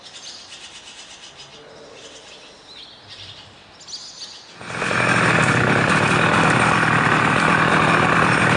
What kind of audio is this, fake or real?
real